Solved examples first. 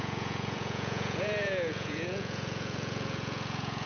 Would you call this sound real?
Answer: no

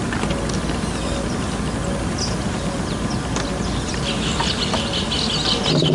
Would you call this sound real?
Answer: yes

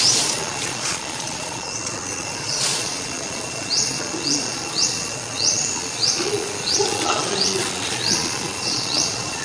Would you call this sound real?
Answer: no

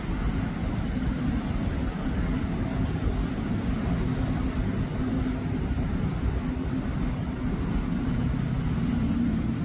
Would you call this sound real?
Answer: yes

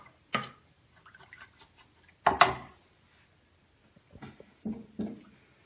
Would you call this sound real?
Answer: yes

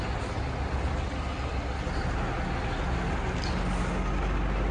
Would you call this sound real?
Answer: yes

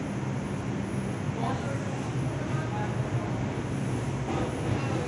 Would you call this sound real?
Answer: yes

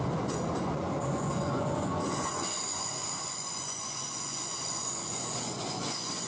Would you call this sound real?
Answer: no